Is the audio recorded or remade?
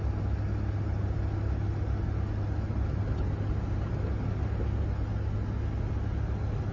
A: recorded